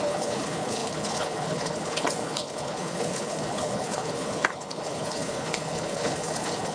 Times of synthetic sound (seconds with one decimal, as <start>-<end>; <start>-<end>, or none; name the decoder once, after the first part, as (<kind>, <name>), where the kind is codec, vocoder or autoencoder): 0.0-6.7 (codec, HILCodec)